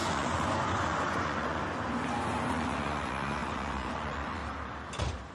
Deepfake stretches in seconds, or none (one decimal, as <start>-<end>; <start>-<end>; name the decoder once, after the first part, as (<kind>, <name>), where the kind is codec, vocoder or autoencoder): 0.0-1.6 (vocoder, Vocos); 2.5-4.4